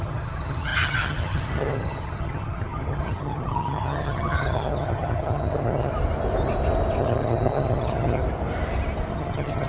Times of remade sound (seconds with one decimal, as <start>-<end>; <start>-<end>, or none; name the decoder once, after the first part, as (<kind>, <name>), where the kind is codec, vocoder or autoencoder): 0.0-5.9 (vocoder, HiFi-GAN); 7.0-8.2; 9.1-9.7